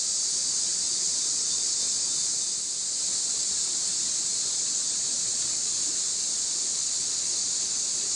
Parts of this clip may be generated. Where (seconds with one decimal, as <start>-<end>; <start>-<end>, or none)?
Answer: 6.8-7.3

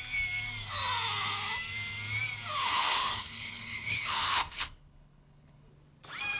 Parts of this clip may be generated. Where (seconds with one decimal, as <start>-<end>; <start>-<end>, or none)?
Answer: 2.6-5.7

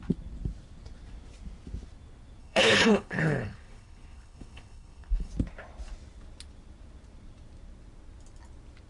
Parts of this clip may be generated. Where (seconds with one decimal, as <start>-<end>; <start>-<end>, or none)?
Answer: 2.4-5.3

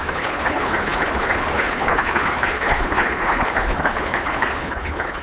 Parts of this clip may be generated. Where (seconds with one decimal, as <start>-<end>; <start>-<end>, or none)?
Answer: 0.0-5.2

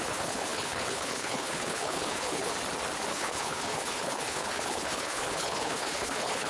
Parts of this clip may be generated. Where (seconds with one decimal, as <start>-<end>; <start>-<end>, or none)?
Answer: 0.0-2.5; 3.1-6.5